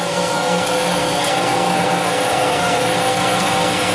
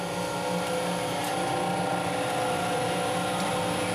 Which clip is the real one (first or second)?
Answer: second